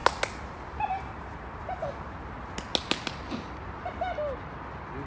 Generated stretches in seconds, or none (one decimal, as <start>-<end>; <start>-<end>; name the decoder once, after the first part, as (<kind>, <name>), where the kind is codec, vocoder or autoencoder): none